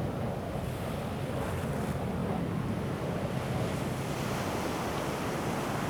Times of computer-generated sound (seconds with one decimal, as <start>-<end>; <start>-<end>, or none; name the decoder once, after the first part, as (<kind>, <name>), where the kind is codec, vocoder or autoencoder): none